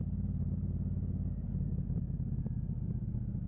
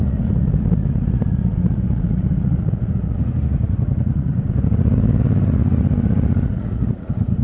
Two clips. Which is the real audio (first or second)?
first